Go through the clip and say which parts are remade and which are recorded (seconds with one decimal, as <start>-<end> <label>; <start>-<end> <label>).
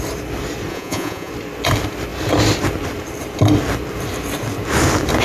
0.0-0.7 recorded; 0.7-1.3 remade; 1.3-5.2 recorded